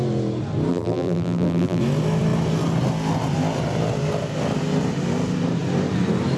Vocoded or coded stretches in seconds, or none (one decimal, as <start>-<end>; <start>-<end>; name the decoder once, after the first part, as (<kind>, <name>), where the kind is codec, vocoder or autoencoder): 0.7-1.8 (vocoder, BigVGAN v2)